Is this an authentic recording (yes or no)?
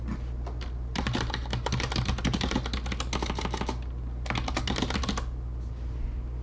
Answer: yes